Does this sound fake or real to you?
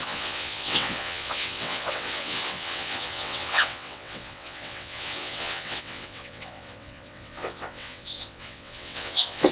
fake